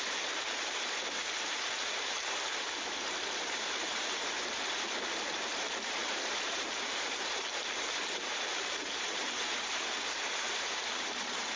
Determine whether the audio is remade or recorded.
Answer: remade